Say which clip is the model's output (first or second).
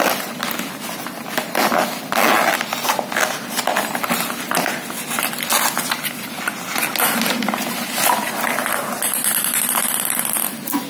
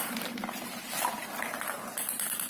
second